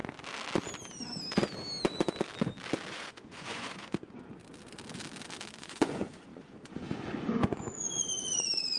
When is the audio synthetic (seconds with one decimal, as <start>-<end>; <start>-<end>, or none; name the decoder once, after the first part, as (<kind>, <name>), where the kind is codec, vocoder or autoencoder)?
2.9-4.4 (vocoder, Vocos); 5.6-8.8